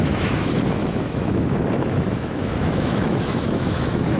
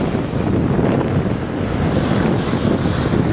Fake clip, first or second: first